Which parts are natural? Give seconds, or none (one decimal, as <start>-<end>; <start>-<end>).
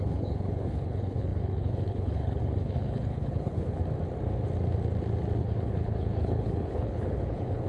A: 3.8-5.4